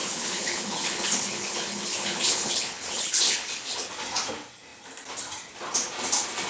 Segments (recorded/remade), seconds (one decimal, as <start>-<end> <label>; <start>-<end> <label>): 0.0-3.9 remade; 3.9-6.5 recorded

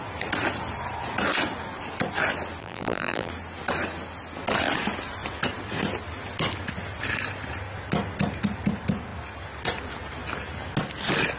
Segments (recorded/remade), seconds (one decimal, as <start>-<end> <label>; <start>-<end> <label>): 0.0-2.6 recorded; 2.6-3.3 remade; 3.3-11.4 recorded

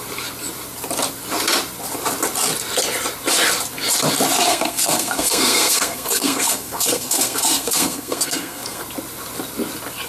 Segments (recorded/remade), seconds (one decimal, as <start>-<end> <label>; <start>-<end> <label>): 0.0-4.5 recorded; 4.5-8.8 remade; 8.8-10.1 recorded

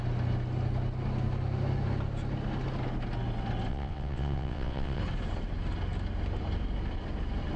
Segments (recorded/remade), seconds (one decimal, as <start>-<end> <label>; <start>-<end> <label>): 0.0-3.7 recorded; 3.7-5.0 remade; 5.0-7.6 recorded

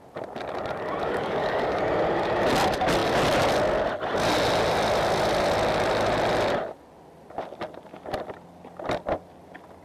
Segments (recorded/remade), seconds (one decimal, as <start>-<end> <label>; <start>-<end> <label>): 0.0-1.0 recorded; 1.0-1.8 remade; 1.8-9.8 recorded

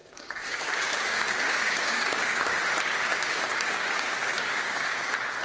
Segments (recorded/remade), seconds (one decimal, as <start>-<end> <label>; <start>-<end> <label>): 0.0-2.6 remade; 2.6-3.1 recorded; 3.1-5.0 remade; 5.0-5.4 recorded

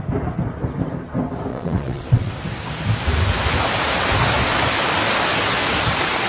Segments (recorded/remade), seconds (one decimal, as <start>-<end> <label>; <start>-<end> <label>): 0.0-1.5 recorded; 1.5-2.3 remade; 2.3-6.3 recorded